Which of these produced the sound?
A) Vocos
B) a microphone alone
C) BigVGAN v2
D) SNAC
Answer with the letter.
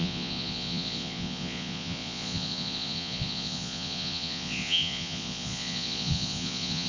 A